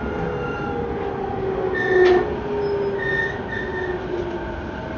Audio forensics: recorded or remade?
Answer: recorded